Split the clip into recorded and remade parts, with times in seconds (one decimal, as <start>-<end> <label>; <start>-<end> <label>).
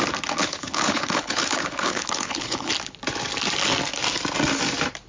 0.0-0.4 recorded; 0.4-2.7 remade; 2.7-5.1 recorded